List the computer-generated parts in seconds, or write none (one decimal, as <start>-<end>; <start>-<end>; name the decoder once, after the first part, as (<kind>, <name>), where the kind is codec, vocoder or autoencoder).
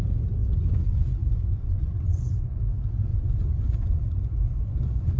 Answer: 0.4-2.6 (vocoder, Vocos); 3.1-5.2